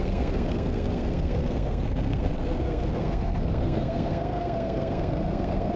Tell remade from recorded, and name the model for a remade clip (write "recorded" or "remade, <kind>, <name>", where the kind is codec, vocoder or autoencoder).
remade, codec, SNAC